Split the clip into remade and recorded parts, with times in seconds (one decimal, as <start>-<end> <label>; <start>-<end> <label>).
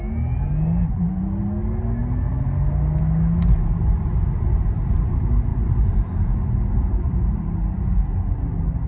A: 0.0-5.5 recorded; 5.5-7.6 remade; 7.6-8.9 recorded